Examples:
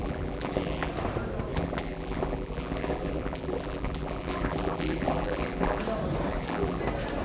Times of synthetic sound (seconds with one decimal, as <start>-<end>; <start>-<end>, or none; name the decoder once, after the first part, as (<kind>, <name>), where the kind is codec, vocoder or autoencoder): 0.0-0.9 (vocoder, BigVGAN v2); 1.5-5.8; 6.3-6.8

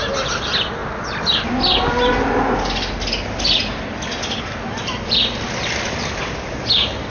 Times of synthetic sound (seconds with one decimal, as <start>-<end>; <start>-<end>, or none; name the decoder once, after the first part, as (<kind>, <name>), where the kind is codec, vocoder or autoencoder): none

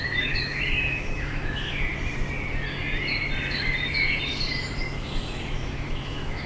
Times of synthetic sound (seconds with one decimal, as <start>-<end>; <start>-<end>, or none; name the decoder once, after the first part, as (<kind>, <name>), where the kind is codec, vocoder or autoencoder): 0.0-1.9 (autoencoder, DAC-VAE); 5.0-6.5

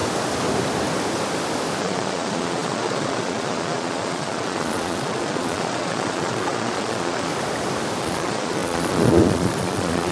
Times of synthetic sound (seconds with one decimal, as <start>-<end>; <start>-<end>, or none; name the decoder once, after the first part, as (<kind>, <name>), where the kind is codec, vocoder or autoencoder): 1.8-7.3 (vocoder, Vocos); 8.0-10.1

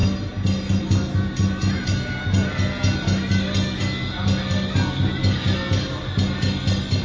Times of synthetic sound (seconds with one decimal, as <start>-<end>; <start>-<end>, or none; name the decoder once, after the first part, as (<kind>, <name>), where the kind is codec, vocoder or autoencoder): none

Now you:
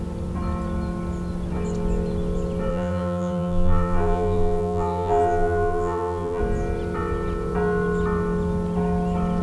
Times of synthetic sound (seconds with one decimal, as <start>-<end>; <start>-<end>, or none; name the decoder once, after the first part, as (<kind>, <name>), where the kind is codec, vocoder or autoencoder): 2.7-6.4 (vocoder, BigVGAN v2)